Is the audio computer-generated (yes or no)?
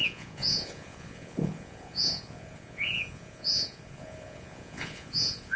yes